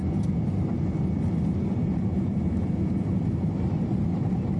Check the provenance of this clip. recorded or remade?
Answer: recorded